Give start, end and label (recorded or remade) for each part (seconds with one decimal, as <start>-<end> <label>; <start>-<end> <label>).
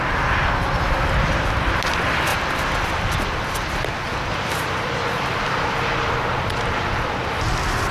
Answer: 0.0-2.3 recorded; 2.3-6.5 remade; 6.5-7.9 recorded